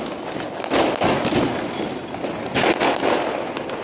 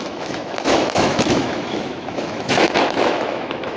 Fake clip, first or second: second